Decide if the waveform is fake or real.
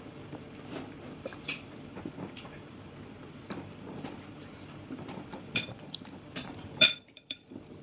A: fake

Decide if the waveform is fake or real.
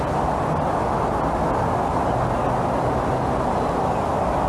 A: real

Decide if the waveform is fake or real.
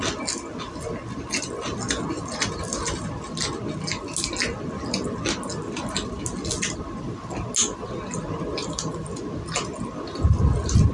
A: real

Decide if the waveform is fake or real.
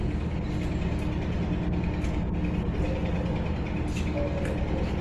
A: real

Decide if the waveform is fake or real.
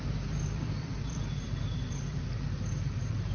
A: fake